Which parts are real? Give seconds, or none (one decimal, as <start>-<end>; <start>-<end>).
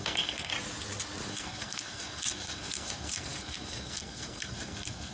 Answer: 0.5-1.3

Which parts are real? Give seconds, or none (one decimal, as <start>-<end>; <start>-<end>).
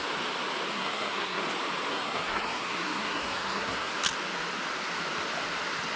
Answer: 0.0-0.7; 1.4-1.9; 3.9-6.0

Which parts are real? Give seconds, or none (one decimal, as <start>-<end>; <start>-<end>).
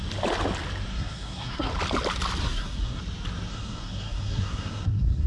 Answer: 0.0-0.9; 1.7-2.4; 3.0-3.5